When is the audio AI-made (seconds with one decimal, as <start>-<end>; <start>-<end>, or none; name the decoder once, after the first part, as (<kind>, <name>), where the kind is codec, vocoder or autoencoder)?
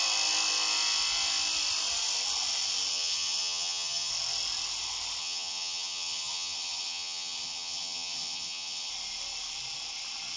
2.9-4.1 (vocoder, HiFi-GAN); 5.2-8.9